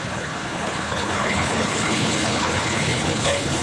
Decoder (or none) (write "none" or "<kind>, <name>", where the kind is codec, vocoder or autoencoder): codec, HILCodec